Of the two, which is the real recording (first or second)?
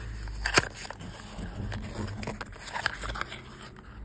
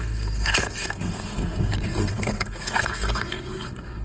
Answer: first